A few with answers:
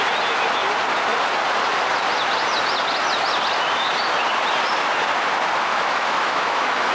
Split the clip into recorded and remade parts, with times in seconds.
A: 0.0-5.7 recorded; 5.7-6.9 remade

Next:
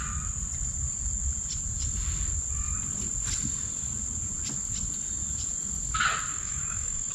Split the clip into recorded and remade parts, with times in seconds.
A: 0.0-6.3 recorded; 6.3-7.1 remade

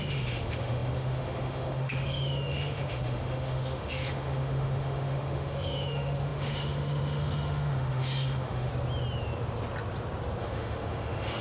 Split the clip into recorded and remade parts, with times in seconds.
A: 0.0-8.7 remade; 8.7-10.4 recorded; 10.4-11.4 remade

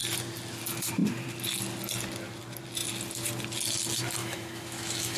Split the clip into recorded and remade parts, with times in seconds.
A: 0.0-4.2 recorded; 4.2-5.2 remade

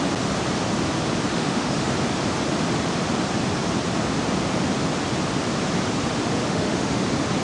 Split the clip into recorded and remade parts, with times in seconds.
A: 0.0-1.3 recorded; 1.3-1.9 remade; 1.9-6.5 recorded; 6.5-7.0 remade; 7.0-7.4 recorded

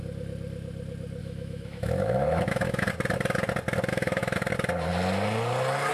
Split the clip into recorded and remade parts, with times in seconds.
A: 0.0-1.2 recorded; 1.2-2.9 remade; 2.9-3.9 recorded; 3.9-4.5 remade; 4.5-5.9 recorded

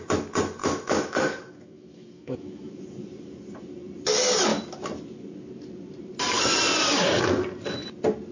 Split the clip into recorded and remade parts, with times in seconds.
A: 0.0-0.6 recorded; 0.6-2.8 remade; 2.8-8.3 recorded